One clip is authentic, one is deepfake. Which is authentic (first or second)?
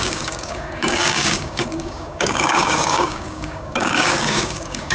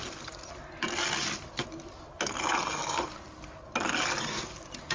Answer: second